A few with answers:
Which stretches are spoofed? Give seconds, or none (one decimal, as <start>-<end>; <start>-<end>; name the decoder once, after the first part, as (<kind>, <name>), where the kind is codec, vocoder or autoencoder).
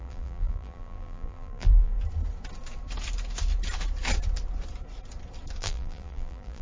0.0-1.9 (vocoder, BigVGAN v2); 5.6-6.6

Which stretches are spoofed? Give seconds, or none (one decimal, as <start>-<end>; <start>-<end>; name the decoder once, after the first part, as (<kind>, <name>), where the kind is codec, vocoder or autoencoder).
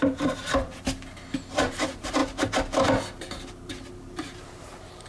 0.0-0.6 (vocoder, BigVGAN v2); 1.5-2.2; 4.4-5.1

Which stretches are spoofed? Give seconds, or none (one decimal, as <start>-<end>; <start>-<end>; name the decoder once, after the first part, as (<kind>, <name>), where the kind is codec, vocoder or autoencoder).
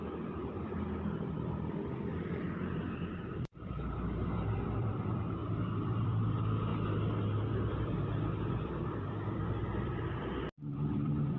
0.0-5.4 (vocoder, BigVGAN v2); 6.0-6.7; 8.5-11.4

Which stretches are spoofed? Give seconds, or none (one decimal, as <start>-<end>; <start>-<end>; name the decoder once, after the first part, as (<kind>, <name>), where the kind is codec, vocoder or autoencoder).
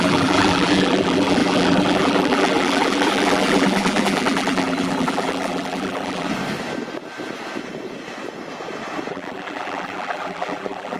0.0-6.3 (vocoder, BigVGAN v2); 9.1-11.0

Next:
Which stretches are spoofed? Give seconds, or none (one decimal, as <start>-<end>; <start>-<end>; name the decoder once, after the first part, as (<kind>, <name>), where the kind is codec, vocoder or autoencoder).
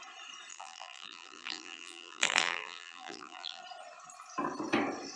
0.5-3.6 (vocoder, BigVGAN v2)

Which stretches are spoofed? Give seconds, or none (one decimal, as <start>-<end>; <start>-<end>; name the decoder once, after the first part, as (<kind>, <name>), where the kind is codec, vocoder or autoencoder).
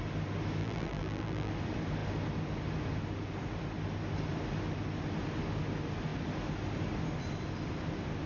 0.6-1.5 (vocoder, BigVGAN v2)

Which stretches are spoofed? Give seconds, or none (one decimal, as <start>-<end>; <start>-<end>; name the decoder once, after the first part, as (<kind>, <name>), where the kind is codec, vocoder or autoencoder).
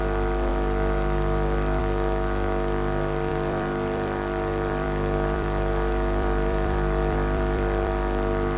3.3-8.6 (vocoder, BigVGAN v2)